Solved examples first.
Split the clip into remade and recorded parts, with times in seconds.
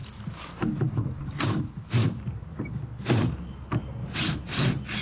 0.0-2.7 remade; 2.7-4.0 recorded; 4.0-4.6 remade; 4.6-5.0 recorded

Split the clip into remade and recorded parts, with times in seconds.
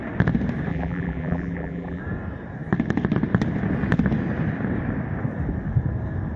0.0-0.7 recorded; 0.7-2.0 remade; 2.0-6.4 recorded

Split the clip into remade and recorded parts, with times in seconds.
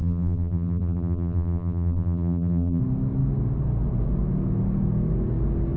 0.0-2.8 remade; 2.8-5.8 recorded